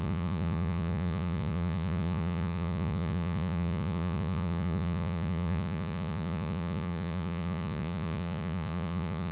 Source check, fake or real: fake